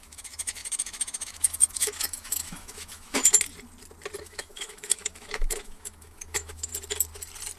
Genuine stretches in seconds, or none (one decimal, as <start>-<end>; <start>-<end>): 3.2-4.2; 6.7-7.6